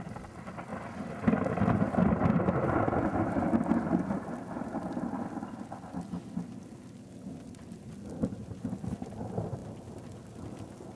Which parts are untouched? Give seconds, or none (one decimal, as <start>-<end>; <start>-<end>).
0.0-11.0

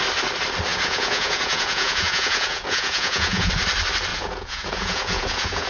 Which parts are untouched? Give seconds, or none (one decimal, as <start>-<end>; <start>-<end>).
0.0-0.7; 3.5-4.1

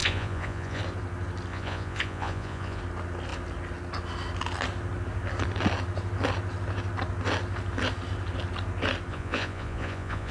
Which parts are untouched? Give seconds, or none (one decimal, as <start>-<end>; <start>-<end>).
0.8-1.5; 2.8-9.1

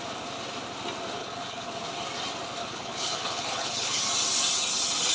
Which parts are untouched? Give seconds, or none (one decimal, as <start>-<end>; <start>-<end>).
0.0-1.2; 1.7-2.6; 4.0-5.1

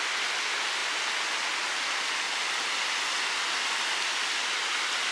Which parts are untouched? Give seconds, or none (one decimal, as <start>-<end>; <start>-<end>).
0.0-5.1